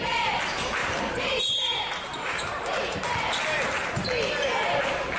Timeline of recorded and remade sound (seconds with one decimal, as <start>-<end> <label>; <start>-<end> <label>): 0.0-0.8 recorded; 0.8-3.9 remade; 3.9-5.2 recorded